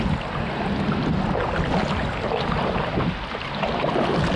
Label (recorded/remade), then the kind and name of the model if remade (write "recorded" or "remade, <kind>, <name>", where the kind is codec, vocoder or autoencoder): recorded